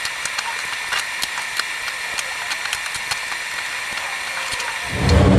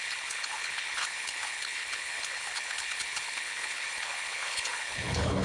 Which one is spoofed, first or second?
second